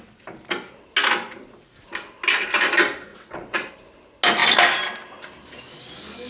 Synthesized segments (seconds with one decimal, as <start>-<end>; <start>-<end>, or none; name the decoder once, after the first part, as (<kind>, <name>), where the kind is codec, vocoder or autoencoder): 3.1-3.7 (vocoder, WaveNeXt)